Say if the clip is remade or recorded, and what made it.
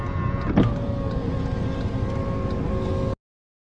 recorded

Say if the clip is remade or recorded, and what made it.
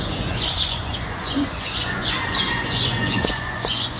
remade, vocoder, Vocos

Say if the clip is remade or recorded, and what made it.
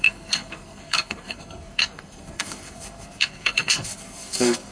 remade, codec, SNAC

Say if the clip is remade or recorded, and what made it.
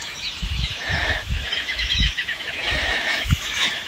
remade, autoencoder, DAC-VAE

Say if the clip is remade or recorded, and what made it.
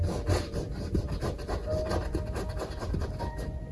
remade, vocoder, BigVGAN v2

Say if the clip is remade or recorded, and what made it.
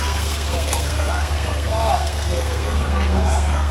remade, codec, SNAC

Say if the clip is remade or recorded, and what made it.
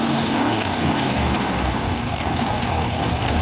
remade, codec, DAC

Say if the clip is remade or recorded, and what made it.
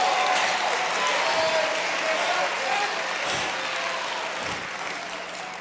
recorded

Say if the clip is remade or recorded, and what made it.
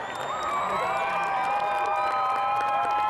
recorded